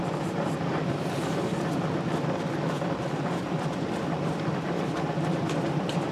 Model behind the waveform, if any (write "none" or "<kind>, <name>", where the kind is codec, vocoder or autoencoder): vocoder, BigVGAN v2